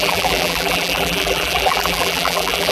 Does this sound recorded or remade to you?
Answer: remade